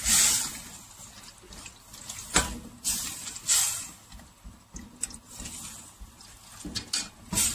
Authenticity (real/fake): real